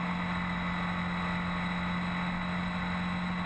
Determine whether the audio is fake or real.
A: real